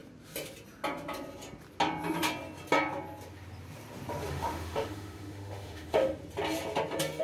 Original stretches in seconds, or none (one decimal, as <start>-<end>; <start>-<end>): 0.0-4.3; 6.2-7.2

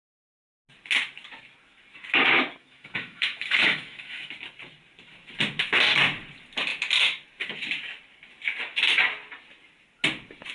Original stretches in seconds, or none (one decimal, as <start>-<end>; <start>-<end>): 0.0-2.6; 4.3-10.5

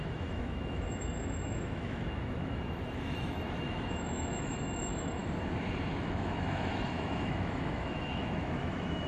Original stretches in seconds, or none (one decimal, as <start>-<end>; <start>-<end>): 5.2-5.9

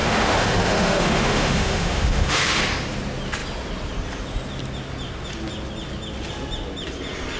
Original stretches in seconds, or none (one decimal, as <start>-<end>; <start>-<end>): 2.6-7.4

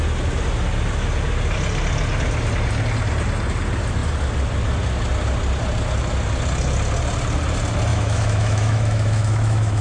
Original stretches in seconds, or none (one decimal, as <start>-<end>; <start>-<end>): 0.0-7.9

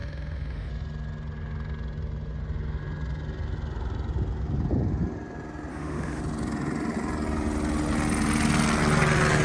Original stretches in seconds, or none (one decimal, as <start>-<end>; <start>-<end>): 0.7-5.7; 6.2-9.4

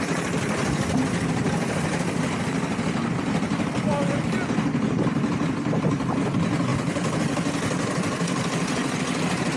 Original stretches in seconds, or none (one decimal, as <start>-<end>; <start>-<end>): 0.0-9.6